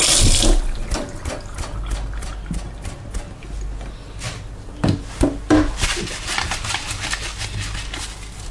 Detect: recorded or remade recorded